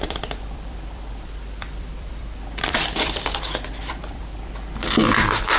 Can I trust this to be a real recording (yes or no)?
no